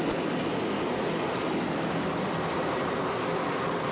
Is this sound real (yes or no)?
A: yes